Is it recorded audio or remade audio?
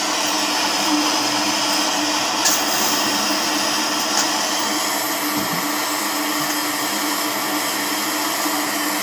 recorded